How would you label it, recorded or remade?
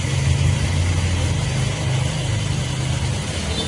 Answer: recorded